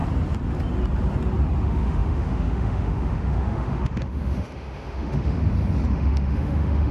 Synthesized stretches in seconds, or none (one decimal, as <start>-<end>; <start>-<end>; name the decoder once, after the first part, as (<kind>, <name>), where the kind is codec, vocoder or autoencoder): 1.6-5.4 (autoencoder, DAC-VAE); 5.9-6.9